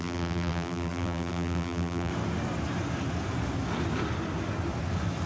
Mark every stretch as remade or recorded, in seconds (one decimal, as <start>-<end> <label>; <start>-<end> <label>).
0.0-2.1 remade; 2.1-5.3 recorded